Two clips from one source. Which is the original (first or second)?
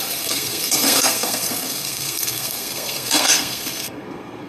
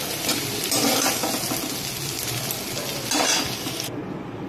second